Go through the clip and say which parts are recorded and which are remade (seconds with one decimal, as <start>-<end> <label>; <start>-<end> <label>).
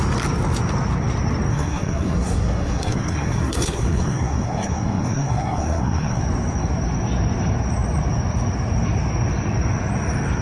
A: 0.0-1.5 recorded; 1.5-6.2 remade; 6.2-10.4 recorded